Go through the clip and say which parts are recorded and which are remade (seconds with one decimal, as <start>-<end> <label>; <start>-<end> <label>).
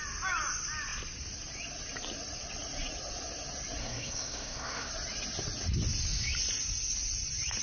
0.0-3.8 recorded; 3.8-4.9 remade; 4.9-7.6 recorded